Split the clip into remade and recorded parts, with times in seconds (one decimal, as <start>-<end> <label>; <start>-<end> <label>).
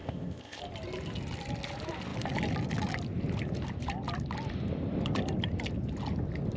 0.0-0.6 remade; 0.6-6.6 recorded